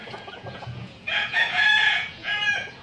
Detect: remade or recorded remade